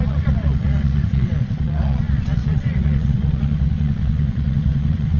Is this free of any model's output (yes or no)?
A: no